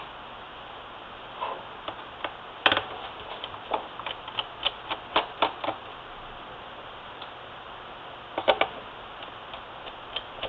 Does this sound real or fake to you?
real